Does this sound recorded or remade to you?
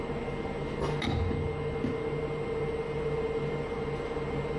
recorded